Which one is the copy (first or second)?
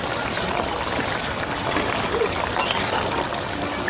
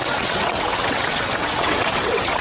second